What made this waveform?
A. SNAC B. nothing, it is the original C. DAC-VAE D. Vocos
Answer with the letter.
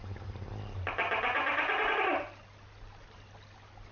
B